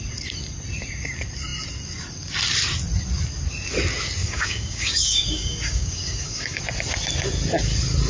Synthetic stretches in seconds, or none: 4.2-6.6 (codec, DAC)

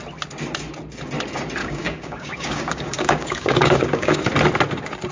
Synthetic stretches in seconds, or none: 1.6-4.2 (codec, DAC)

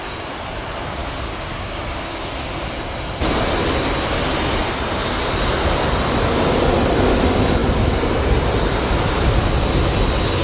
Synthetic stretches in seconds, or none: 1.0-2.3 (codec, DAC); 7.6-8.3

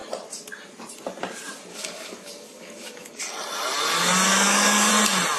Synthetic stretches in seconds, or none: 1.7-3.2 (codec, DAC); 4.3-4.9